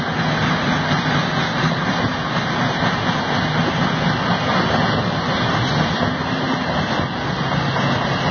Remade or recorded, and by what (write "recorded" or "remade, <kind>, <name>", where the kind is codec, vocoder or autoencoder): recorded